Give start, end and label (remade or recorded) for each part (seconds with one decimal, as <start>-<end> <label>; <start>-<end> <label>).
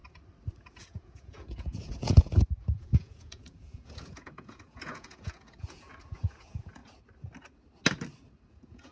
0.0-0.8 recorded; 0.8-6.8 remade; 6.8-8.5 recorded; 8.5-8.9 remade